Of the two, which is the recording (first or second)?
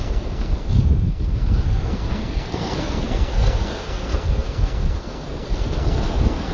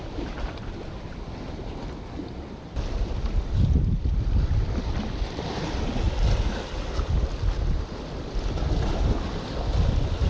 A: second